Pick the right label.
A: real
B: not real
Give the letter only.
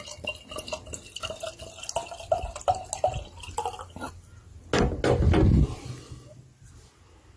A